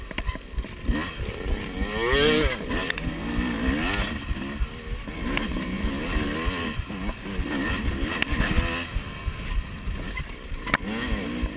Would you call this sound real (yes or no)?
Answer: yes